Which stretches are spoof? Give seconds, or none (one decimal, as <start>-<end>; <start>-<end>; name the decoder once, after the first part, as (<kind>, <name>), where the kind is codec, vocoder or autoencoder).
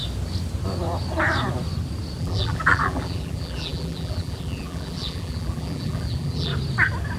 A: 2.2-6.5 (vocoder, BigVGAN v2)